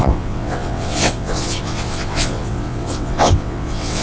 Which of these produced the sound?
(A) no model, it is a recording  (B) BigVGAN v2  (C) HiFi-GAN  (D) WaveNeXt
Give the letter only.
D